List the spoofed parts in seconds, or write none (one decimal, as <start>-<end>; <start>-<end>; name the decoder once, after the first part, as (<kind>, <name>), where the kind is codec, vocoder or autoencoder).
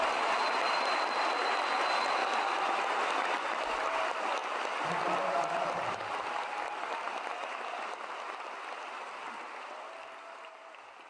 0.0-2.2 (vocoder, BigVGAN v2); 3.8-11.1